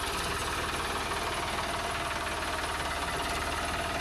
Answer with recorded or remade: recorded